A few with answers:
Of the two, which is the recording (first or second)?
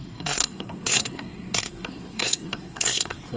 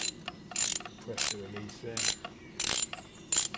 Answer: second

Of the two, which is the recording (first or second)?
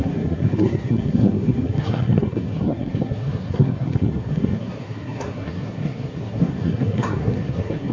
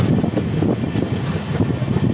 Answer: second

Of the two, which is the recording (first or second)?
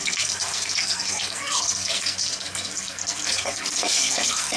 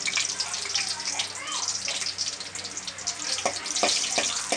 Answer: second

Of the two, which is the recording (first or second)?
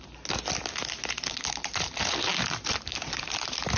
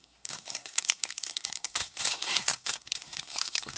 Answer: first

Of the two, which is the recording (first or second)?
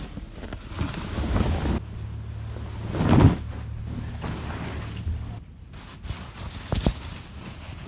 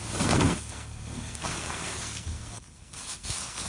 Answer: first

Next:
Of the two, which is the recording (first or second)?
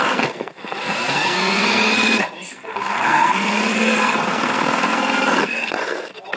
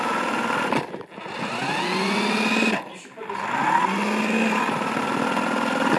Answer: second